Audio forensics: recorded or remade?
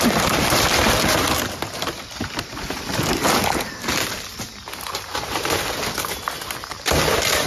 recorded